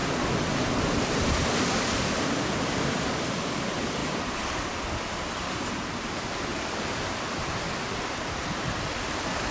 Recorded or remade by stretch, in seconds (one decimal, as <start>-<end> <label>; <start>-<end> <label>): 0.0-1.0 recorded; 1.0-9.5 remade